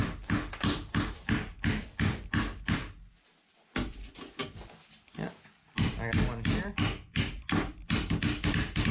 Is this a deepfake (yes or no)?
no